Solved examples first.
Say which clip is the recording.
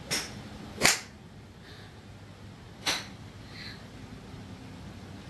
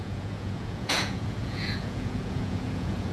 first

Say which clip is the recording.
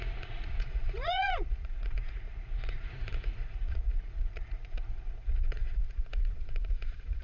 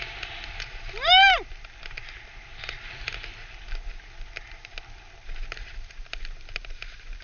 second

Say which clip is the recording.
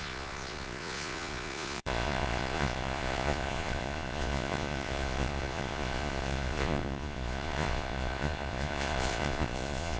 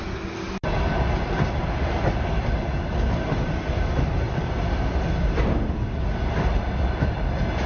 second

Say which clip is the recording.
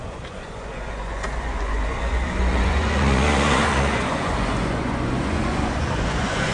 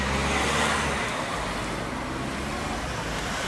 second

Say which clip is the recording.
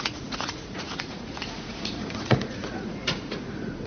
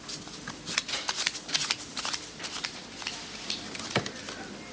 second